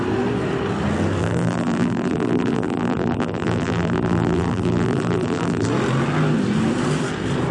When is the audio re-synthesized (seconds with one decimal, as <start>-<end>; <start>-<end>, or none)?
1.2-5.7